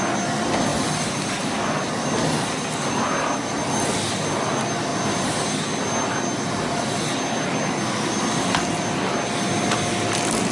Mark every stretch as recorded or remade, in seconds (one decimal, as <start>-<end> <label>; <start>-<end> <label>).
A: 0.0-10.5 recorded